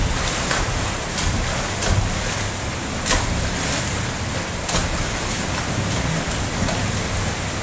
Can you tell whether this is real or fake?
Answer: real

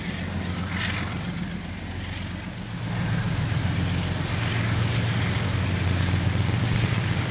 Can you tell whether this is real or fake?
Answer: real